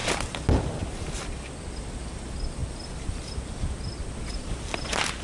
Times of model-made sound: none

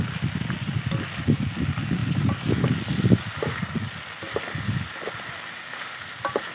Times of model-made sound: none

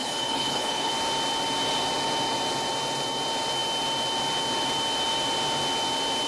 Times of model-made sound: 0.0-0.9 (codec, HILCodec)

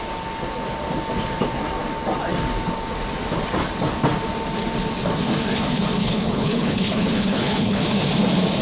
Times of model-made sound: 6.0-7.8 (codec, HILCodec)

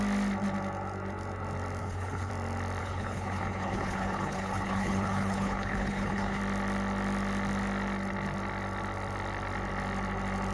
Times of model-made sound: 1.8-2.3 (codec, HILCodec); 2.8-6.4

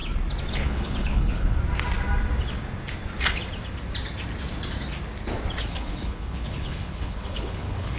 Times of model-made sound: 0.5-1.6 (codec, HILCodec); 5.7-8.0